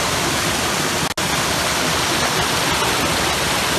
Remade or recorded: recorded